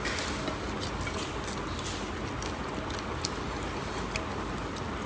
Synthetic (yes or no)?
no